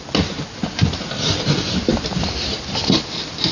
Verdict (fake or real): real